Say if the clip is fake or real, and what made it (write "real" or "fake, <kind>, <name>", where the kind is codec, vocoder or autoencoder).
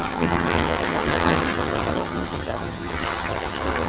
fake, vocoder, HiFi-GAN